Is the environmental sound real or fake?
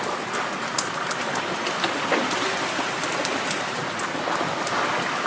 real